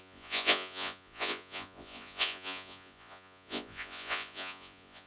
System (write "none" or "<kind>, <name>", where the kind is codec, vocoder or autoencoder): vocoder, Vocos